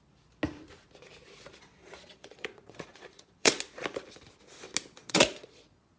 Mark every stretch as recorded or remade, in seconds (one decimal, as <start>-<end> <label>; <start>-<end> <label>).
0.0-1.8 recorded; 1.8-3.6 remade; 3.6-5.0 recorded; 5.0-6.0 remade